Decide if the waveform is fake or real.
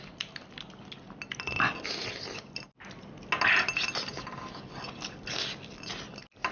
real